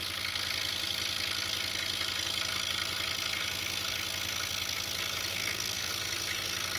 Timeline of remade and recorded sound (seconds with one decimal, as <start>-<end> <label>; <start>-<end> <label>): 0.0-5.3 recorded; 5.3-5.9 remade; 5.9-6.8 recorded